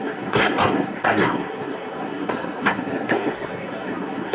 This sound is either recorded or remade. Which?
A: remade